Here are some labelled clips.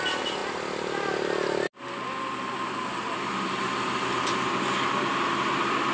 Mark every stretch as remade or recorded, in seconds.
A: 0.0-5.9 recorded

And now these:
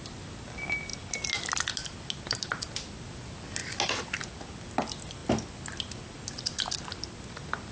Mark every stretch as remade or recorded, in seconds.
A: 0.0-7.7 recorded

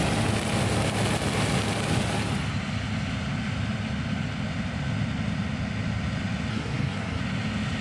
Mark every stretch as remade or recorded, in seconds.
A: 0.0-6.5 recorded; 6.5-7.2 remade; 7.2-7.8 recorded